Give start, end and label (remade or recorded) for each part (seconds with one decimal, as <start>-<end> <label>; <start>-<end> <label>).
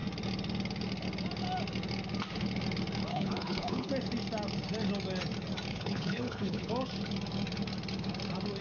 0.0-3.1 recorded; 3.1-3.9 remade; 3.9-5.7 recorded; 5.7-6.7 remade; 6.7-8.6 recorded